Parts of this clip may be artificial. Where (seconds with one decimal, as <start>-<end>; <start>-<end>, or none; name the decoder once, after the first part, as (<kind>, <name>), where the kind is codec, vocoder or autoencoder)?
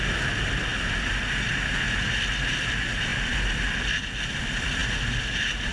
none